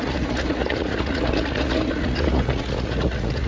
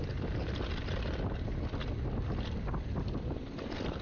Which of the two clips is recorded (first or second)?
second